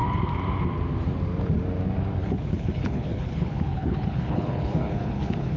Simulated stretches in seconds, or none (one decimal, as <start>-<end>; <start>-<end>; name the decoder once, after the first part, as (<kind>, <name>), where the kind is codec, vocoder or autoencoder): 2.2-5.6 (codec, HILCodec)